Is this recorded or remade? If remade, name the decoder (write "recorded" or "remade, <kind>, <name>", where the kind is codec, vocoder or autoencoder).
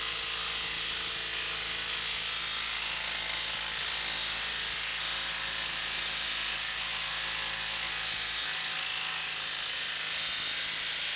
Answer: recorded